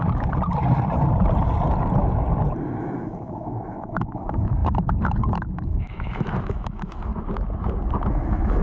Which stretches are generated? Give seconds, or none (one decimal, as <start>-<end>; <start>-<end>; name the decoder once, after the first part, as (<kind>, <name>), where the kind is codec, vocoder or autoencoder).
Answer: 2.8-7.1 (autoencoder, DAC-VAE); 8.1-8.6